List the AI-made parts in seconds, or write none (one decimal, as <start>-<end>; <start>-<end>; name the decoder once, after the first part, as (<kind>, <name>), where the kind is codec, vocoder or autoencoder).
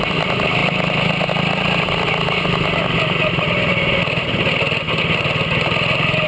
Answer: none